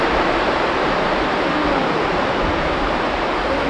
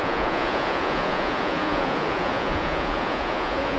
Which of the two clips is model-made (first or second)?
second